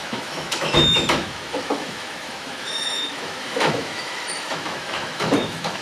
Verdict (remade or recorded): remade